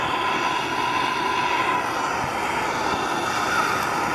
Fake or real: real